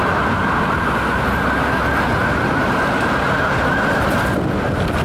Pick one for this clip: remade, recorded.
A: recorded